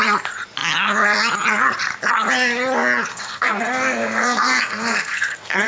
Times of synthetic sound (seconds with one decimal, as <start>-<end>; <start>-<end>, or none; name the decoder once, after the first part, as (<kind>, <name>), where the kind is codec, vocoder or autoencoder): 3.1-5.7 (codec, SNAC)